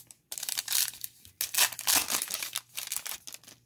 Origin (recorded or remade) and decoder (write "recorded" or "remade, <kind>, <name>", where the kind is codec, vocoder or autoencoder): recorded